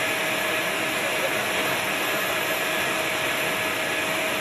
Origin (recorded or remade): recorded